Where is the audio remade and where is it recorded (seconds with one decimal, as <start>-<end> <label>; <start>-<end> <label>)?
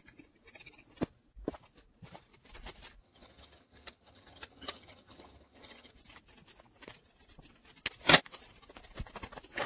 0.0-3.0 recorded; 3.0-5.9 remade; 5.9-9.7 recorded